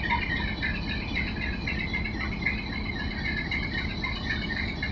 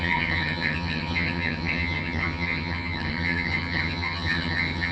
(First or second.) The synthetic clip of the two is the second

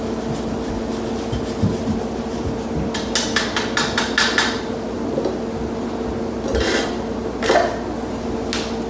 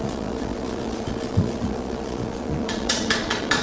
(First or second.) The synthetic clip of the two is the second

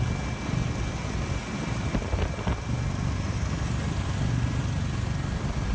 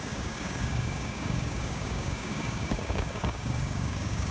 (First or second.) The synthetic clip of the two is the second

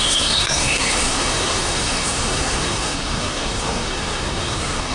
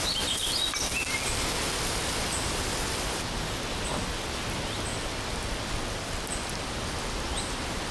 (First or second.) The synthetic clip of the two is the first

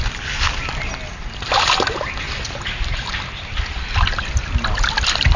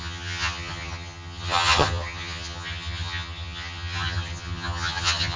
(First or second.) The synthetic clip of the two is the second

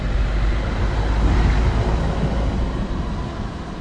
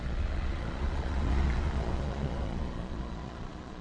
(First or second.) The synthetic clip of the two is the second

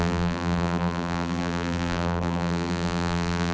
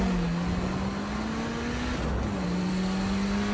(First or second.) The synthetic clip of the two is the first